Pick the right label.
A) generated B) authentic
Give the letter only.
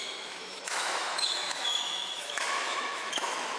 A